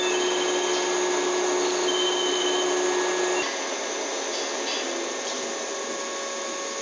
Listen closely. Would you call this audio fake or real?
real